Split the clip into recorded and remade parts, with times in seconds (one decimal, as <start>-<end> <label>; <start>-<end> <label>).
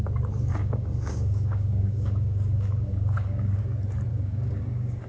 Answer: 0.0-0.5 recorded; 0.5-3.6 remade; 3.6-4.1 recorded; 4.1-5.1 remade